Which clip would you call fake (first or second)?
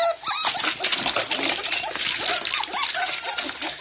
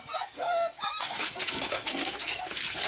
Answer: second